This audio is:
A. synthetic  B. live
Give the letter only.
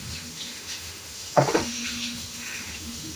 A